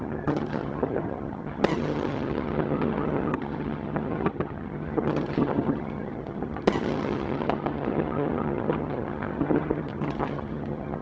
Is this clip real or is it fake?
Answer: fake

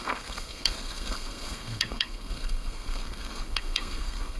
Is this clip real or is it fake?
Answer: fake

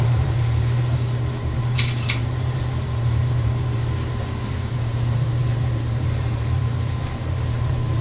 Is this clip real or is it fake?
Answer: fake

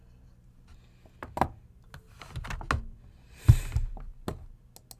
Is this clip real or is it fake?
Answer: real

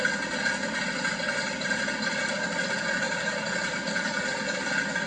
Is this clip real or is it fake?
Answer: real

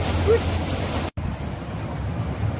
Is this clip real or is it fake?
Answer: real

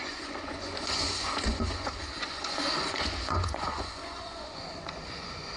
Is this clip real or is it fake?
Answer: fake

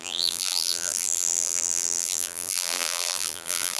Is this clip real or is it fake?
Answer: fake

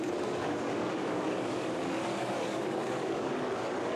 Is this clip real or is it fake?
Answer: fake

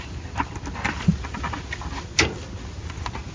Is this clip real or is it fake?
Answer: real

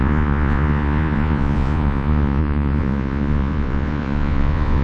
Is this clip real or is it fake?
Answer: fake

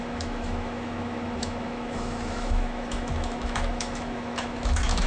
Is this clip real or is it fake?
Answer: fake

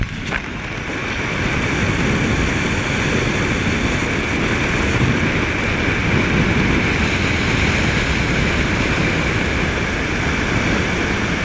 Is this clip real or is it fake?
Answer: real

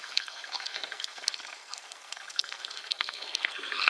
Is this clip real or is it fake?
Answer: fake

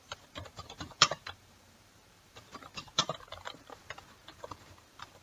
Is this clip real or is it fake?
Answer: fake